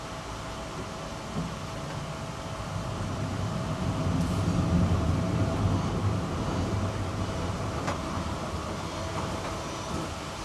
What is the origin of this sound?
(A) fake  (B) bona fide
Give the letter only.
B